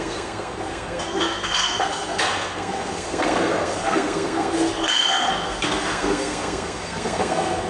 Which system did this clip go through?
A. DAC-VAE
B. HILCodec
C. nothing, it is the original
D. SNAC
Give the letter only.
D